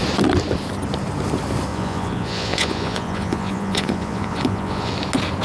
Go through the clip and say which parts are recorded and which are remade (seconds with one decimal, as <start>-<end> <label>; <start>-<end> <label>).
0.0-1.7 recorded; 1.7-4.9 remade; 4.9-5.4 recorded